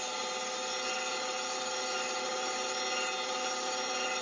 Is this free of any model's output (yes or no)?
yes